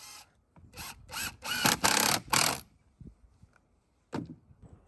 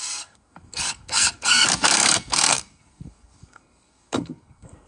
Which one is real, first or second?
first